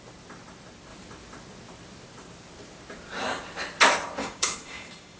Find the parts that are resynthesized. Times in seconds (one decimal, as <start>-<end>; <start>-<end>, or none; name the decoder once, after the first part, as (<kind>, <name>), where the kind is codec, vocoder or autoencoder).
4.2-5.2 (codec, DAC)